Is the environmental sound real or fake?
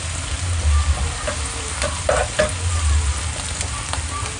real